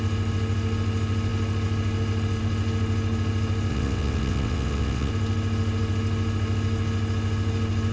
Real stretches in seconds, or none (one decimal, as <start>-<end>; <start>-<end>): 0.0-3.7; 5.1-7.9